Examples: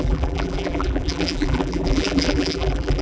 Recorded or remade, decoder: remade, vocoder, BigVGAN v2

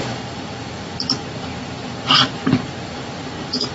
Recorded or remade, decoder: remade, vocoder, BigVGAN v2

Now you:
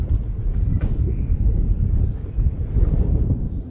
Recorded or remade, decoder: remade, vocoder, BigVGAN v2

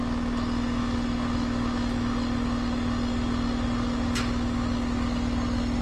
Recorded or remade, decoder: recorded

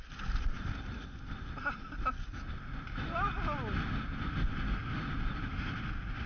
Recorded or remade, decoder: recorded